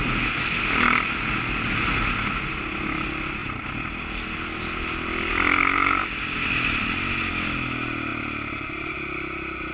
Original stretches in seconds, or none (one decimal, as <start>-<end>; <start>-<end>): 0.0-9.7